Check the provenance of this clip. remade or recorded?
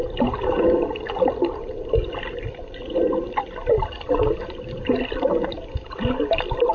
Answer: recorded